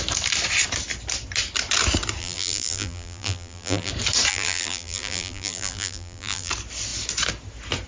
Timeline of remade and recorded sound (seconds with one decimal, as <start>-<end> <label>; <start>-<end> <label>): 0.0-2.2 recorded; 2.2-3.9 remade; 3.9-4.3 recorded; 4.3-6.5 remade; 6.5-7.9 recorded